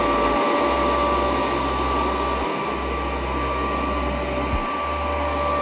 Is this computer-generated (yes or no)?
no